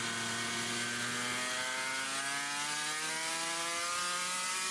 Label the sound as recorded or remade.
recorded